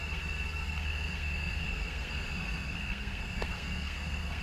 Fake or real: fake